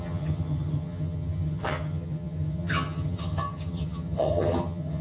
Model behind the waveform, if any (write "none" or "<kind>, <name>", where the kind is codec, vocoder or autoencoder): vocoder, HiFi-GAN